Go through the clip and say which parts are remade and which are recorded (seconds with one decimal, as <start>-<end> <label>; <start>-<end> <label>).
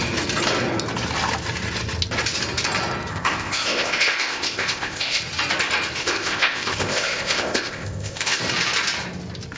0.0-3.1 recorded; 3.1-5.2 remade; 5.2-6.0 recorded; 6.0-8.4 remade; 8.4-9.6 recorded